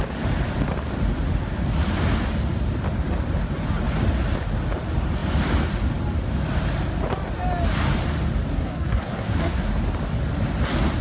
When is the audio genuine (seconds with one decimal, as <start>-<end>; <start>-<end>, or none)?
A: 0.0-8.5; 9.7-11.0

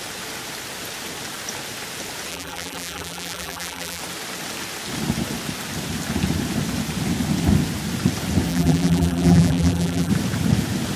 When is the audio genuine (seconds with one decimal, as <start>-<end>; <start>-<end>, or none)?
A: 0.0-2.3; 4.0-8.5; 10.1-11.0

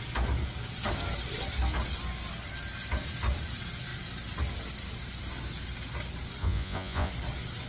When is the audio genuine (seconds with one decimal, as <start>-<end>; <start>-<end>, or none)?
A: 0.0-6.4; 7.1-7.7

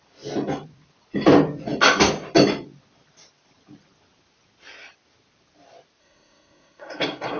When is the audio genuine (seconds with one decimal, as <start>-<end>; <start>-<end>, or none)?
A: 0.0-6.0

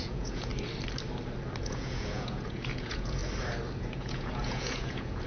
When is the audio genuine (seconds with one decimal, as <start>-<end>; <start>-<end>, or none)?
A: 0.5-1.6; 3.2-3.8

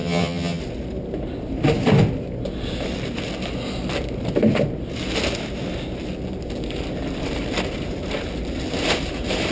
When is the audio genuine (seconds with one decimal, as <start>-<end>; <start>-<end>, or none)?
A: 0.6-9.5